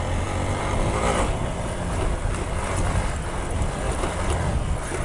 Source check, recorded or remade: recorded